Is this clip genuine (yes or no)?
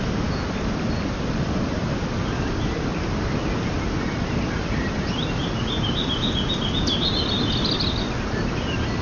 yes